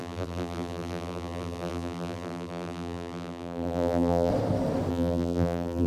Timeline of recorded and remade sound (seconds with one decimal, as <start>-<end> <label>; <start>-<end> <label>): 0.0-4.3 remade; 4.3-4.9 recorded; 4.9-5.9 remade